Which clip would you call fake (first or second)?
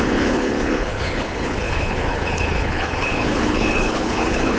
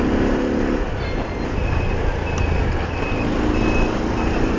first